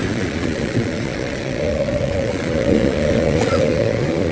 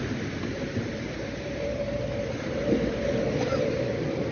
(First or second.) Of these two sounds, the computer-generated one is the first